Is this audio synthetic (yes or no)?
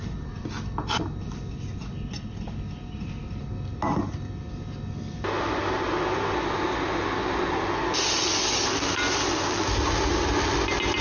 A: no